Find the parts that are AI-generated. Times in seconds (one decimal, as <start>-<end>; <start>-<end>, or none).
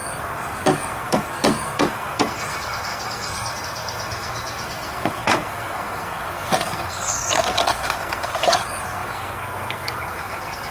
0.0-10.7